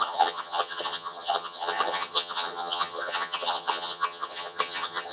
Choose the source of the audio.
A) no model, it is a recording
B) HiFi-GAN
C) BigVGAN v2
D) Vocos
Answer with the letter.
B